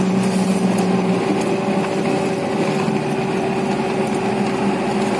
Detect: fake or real real